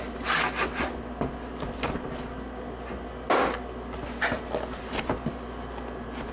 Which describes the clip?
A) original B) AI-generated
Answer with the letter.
A